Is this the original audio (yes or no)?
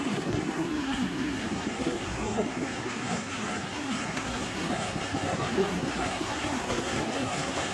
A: no